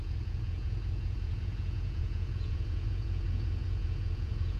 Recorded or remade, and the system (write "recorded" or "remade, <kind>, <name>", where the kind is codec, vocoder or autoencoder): remade, vocoder, Vocos